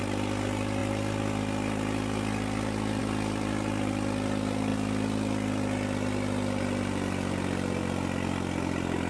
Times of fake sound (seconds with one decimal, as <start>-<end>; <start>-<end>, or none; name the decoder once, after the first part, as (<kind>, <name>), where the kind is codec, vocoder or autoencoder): none